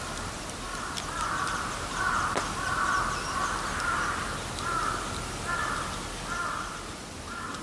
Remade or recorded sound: recorded